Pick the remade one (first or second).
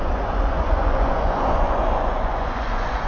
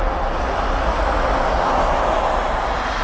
first